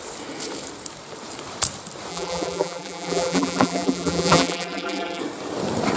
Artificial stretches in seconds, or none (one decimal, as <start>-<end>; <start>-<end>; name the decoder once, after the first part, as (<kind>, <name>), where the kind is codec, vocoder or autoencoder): 2.1-5.2 (vocoder, BigVGAN v2)